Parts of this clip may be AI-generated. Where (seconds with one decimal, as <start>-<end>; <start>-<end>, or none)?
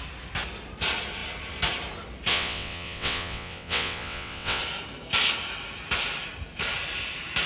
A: 2.3-4.6